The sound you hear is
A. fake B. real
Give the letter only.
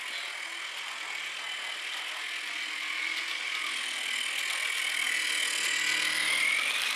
B